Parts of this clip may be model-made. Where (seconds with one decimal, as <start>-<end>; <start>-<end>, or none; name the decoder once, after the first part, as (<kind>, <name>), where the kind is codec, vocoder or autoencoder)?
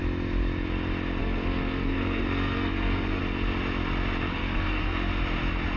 1.2-3.2 (codec, SNAC); 4.3-5.1